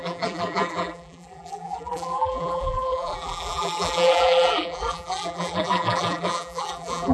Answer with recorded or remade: remade